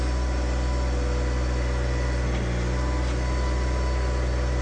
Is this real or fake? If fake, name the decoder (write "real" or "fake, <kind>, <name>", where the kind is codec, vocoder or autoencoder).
real